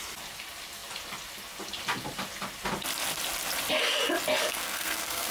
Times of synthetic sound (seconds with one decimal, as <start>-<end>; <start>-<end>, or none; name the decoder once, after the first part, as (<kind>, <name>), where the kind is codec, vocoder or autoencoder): 4.4-5.3 (codec, SNAC)